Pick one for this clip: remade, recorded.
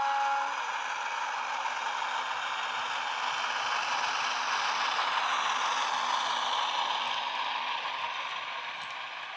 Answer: recorded